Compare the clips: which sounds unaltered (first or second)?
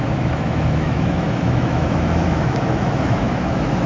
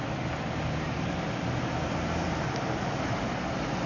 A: second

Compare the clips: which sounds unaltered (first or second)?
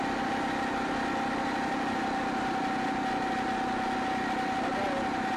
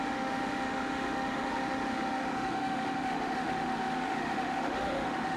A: first